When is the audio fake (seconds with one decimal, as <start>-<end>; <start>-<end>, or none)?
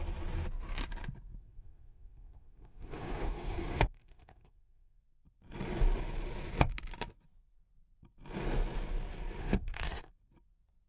1.4-5.0; 9.4-10.1